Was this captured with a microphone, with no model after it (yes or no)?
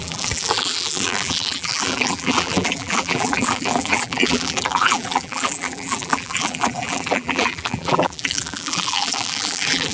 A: no